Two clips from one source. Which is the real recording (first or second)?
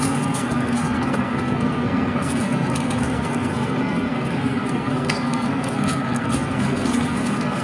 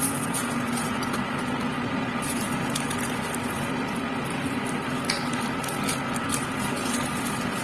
second